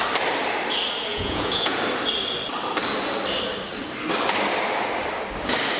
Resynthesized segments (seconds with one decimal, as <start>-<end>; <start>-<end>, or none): 1.1-1.8